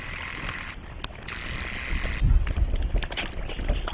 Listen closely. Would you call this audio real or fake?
real